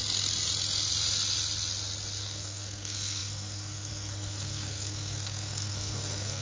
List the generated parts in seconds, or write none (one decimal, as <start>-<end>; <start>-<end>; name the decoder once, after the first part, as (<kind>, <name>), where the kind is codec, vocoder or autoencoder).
2.2-6.4 (codec, SNAC)